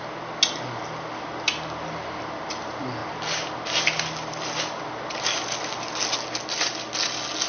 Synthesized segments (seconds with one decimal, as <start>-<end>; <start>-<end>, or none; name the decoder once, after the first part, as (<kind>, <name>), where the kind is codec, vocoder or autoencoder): none